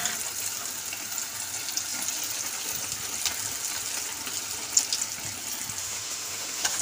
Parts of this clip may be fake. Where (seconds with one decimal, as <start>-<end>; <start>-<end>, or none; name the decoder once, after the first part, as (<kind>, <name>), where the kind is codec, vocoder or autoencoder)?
5.8-6.8 (autoencoder, DAC-VAE)